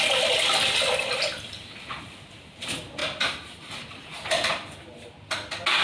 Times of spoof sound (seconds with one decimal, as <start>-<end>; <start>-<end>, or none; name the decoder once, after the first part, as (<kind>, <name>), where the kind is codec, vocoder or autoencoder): none